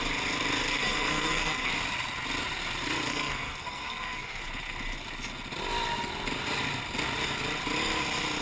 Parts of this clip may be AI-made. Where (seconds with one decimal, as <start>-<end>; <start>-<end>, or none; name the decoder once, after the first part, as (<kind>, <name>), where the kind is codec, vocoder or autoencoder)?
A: 0.7-1.7 (codec, SNAC); 3.1-4.4